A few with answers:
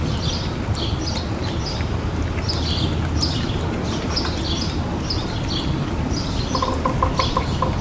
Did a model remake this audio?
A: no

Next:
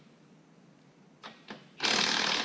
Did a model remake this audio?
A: no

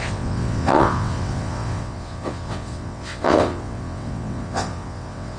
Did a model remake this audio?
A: yes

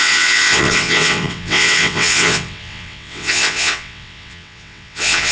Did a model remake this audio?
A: yes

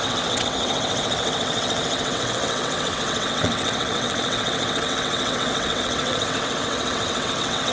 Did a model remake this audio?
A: yes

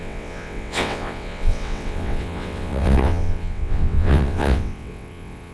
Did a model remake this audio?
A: yes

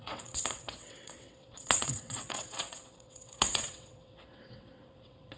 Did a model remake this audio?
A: yes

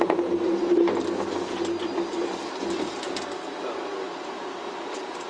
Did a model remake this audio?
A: no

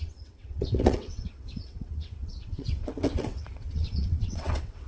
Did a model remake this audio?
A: yes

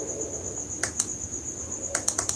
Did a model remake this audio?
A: no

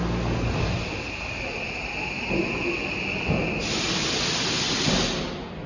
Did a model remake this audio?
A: no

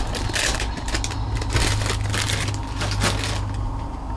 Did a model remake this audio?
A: no